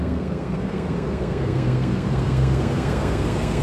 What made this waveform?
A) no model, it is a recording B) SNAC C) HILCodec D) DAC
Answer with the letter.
B